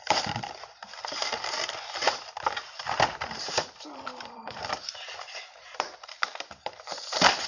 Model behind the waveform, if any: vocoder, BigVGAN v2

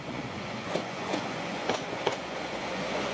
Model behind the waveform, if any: vocoder, Vocos